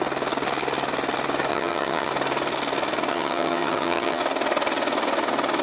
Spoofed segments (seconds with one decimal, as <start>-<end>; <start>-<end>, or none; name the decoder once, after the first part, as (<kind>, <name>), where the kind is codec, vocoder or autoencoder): 1.5-2.1 (vocoder, HiFi-GAN); 3.1-4.2